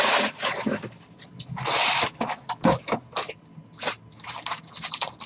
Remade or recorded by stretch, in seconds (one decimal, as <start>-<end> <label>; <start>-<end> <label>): 0.0-5.3 recorded